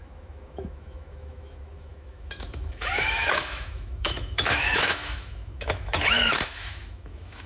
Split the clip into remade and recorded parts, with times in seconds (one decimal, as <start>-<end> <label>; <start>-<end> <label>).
0.0-7.5 remade